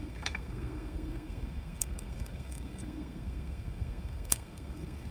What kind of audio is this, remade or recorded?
remade